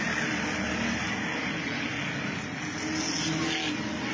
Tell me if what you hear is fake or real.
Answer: real